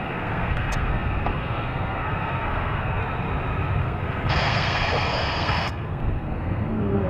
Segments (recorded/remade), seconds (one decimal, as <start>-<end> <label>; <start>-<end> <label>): 0.0-3.0 remade; 3.0-3.8 recorded; 3.8-7.1 remade